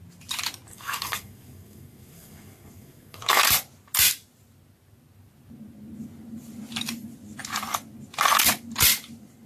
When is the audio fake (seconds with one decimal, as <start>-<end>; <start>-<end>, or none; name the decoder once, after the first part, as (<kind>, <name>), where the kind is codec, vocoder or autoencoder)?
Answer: 0.7-3.4 (codec, SNAC)